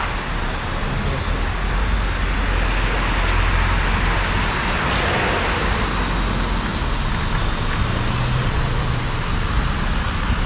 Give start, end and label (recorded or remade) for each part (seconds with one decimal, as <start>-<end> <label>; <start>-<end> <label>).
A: 0.0-10.5 recorded